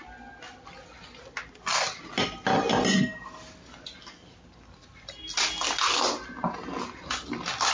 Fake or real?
real